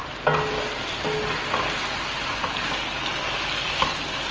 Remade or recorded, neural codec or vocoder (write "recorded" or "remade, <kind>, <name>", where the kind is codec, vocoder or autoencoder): recorded